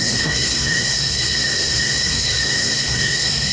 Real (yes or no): no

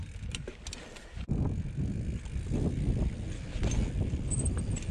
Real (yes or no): yes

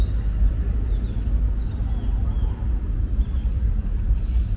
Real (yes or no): yes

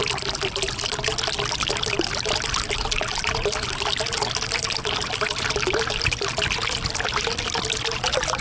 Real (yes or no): yes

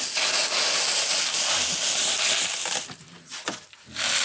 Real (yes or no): yes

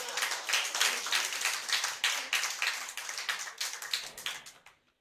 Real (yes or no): yes